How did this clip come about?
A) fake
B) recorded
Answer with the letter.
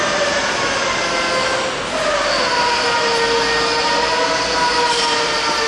B